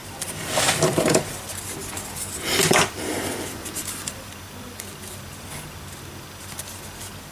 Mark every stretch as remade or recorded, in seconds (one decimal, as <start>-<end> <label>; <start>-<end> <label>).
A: 0.0-1.3 remade; 1.3-1.8 recorded; 1.8-4.3 remade; 4.3-7.3 recorded

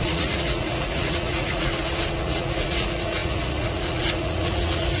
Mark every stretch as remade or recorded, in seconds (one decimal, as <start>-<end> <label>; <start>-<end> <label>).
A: 0.0-1.7 remade; 1.7-2.2 recorded; 2.2-5.0 remade

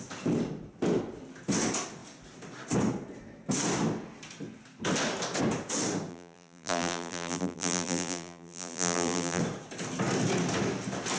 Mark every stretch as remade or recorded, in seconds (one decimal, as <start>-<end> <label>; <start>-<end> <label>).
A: 0.0-6.1 recorded; 6.1-9.4 remade; 9.4-11.2 recorded

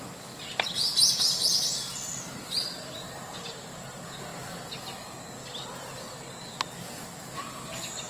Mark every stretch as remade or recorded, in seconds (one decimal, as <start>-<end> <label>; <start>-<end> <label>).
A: 0.0-8.1 recorded